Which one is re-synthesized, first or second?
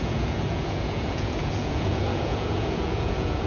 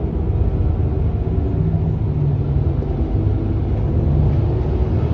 first